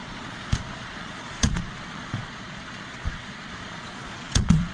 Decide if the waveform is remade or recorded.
remade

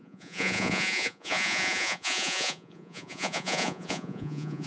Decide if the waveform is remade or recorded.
remade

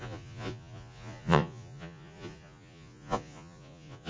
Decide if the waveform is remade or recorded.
remade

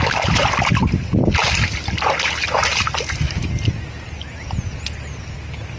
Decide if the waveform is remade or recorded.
recorded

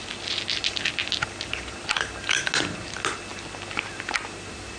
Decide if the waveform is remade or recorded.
recorded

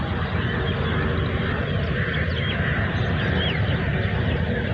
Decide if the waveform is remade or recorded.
recorded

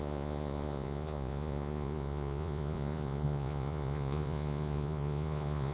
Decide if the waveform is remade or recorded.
remade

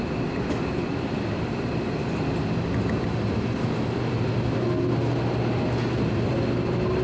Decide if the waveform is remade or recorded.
recorded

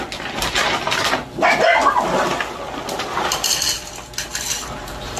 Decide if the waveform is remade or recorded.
recorded